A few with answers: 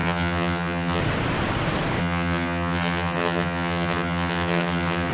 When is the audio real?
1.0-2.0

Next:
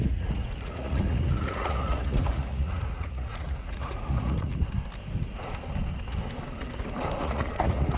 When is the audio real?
4.5-7.2

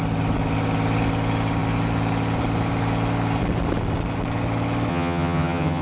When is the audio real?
0.0-4.9

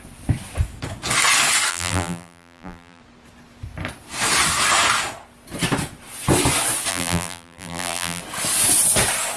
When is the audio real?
0.0-1.7; 3.0-6.9; 8.2-9.4

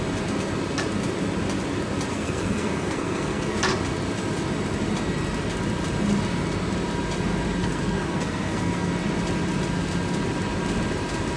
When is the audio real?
0.0-2.1; 3.6-7.6; 8.9-11.4

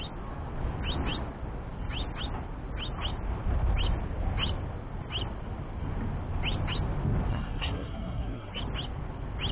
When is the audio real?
0.0-7.3; 8.6-9.5

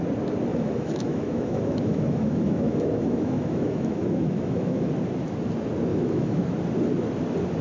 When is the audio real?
0.0-0.5; 4.9-5.9; 6.4-7.6